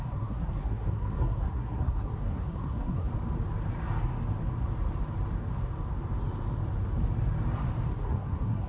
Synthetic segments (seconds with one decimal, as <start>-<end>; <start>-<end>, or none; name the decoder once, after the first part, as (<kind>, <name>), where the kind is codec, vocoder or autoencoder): 0.0-3.1 (codec, SNAC); 7.9-8.7